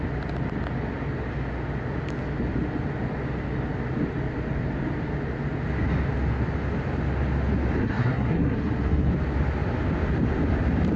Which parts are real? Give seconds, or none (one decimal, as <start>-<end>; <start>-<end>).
0.0-7.8; 9.1-11.0